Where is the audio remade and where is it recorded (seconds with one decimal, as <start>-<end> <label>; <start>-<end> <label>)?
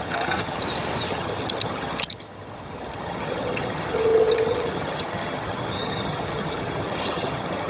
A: 0.0-0.6 remade; 0.6-1.1 recorded; 1.1-7.7 remade